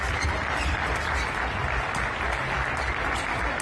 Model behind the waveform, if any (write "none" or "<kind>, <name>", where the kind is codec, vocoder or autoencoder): none